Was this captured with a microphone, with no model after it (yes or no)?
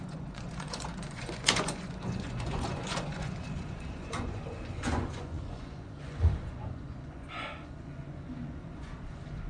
no